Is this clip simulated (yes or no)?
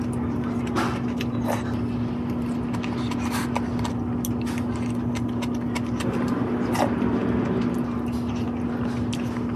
no